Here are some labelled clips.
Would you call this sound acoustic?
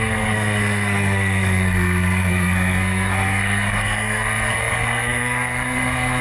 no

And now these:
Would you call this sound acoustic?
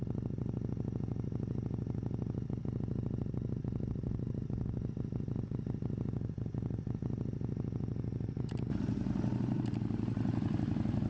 yes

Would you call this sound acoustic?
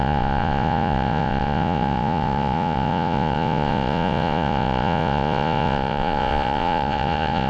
no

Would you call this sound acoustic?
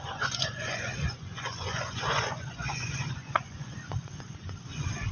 no